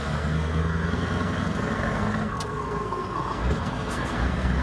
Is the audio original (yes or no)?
no